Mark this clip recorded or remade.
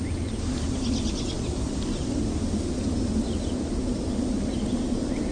recorded